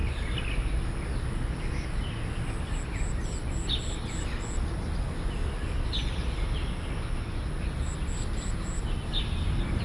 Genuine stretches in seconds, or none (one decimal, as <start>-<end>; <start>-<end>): 0.0-9.8